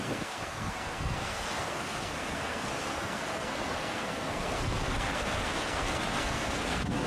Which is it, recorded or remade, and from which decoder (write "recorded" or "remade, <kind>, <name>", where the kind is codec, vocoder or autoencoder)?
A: remade, codec, SNAC